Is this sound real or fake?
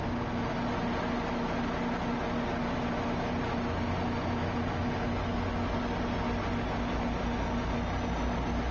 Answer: real